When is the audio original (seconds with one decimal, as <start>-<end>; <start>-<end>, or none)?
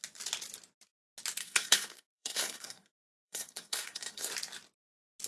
0.0-1.4; 4.3-5.3